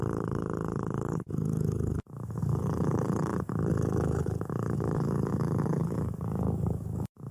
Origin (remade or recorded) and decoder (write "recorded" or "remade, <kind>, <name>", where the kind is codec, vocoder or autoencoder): remade, codec, DAC